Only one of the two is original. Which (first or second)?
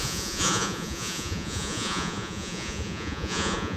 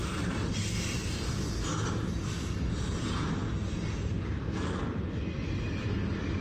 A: second